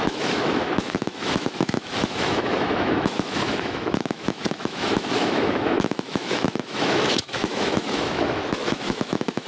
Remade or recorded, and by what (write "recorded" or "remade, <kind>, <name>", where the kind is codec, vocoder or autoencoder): remade, autoencoder, DAC-VAE